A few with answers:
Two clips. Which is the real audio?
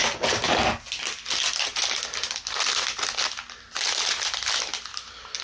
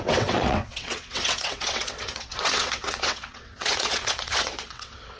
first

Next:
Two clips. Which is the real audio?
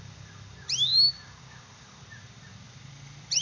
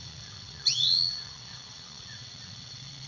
first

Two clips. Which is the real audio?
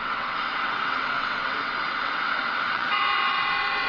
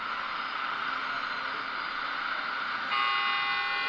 second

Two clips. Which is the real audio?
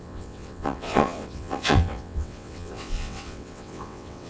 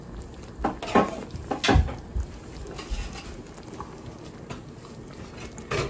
second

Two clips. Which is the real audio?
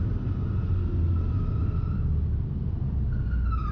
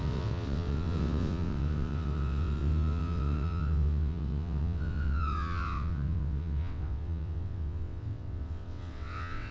first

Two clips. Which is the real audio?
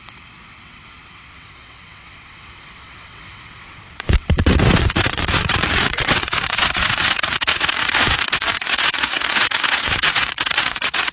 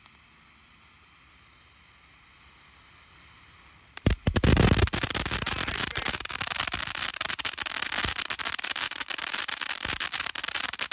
second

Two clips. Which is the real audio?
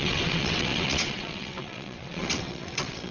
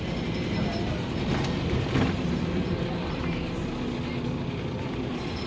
second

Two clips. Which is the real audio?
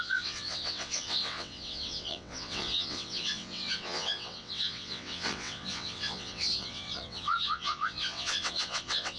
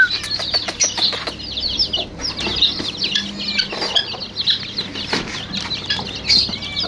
second